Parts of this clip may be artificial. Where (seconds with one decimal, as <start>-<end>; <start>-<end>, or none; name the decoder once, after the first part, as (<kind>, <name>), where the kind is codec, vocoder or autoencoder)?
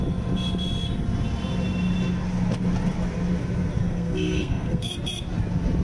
3.8-4.9 (codec, SNAC)